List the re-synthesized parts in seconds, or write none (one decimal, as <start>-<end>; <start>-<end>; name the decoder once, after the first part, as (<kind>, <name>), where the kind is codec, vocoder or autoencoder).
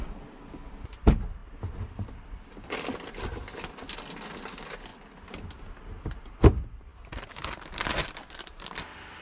none